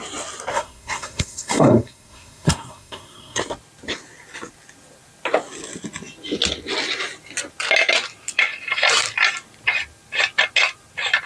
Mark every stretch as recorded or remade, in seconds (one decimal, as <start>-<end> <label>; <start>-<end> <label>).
0.0-0.5 recorded; 0.5-3.4 remade; 3.4-11.3 recorded